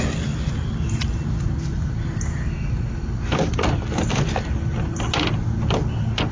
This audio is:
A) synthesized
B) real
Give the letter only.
B